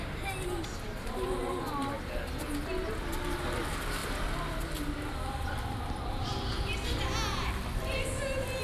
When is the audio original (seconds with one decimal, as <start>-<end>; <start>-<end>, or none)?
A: 0.0-8.6